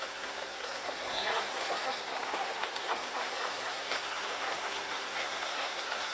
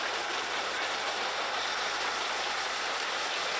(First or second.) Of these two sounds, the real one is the second